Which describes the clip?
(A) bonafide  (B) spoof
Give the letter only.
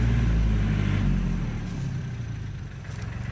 A